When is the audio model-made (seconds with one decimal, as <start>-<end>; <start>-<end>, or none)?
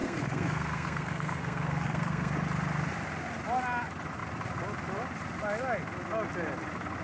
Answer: 0.0-2.3